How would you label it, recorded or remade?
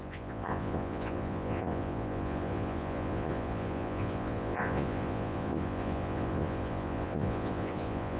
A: remade